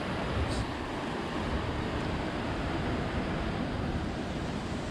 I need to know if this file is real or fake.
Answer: real